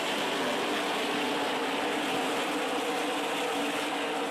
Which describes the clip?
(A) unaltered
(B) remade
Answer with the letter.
A